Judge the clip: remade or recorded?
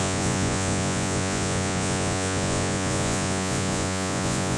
remade